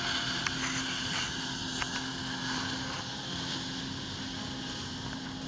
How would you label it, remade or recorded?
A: recorded